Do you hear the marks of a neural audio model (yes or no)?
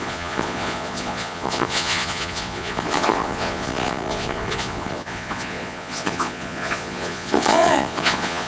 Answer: yes